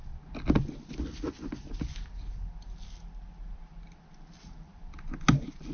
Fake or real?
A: real